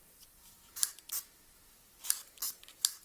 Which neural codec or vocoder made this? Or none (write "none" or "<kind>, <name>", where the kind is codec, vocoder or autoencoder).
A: vocoder, BigVGAN v2